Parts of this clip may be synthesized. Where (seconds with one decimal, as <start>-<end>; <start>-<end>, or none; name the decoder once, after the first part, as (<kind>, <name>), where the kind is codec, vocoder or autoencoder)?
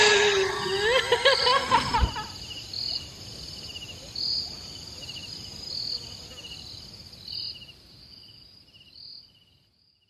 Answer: none